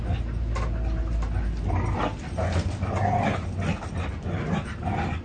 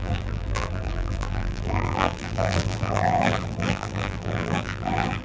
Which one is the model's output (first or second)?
second